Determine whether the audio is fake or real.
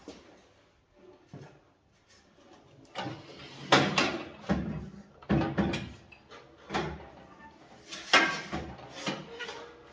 real